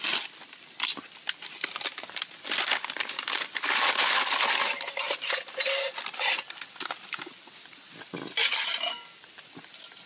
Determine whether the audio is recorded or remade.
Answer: recorded